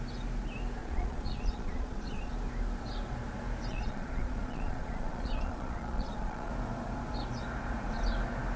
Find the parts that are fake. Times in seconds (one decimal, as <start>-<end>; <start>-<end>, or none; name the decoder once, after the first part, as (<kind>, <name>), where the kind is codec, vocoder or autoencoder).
0.8-2.3 (vocoder, Vocos); 3.7-6.5